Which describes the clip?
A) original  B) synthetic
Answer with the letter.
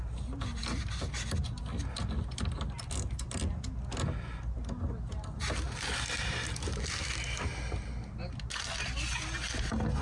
A